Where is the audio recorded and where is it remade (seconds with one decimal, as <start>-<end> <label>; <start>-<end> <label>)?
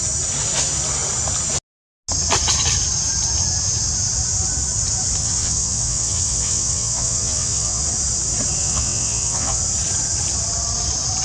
0.0-5.2 recorded; 5.2-7.8 remade; 7.8-8.6 recorded; 8.6-9.6 remade; 9.6-11.2 recorded